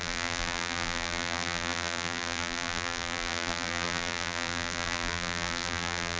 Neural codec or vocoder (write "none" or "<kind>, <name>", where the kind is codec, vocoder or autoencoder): vocoder, BigVGAN v2